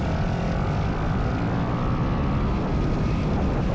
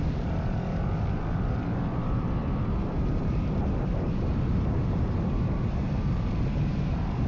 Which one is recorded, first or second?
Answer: first